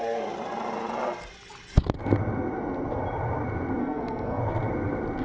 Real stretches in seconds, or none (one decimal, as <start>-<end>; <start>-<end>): 0.0-3.8; 4.4-5.2